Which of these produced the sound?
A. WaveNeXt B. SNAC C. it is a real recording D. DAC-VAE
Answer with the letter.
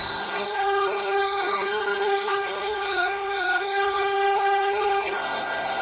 B